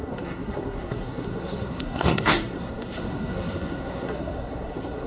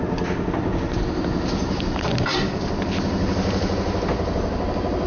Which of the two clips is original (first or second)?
second